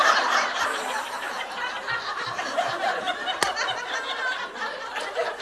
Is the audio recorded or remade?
remade